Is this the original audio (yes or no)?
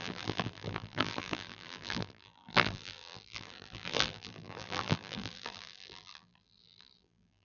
no